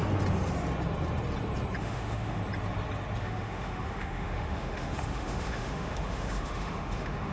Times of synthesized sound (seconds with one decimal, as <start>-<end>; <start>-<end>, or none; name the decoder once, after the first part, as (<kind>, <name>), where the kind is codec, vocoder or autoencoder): 1.8-2.4 (autoencoder, DAC-VAE); 3.2-7.3